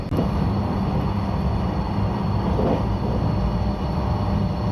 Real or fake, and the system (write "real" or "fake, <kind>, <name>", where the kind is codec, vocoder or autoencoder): real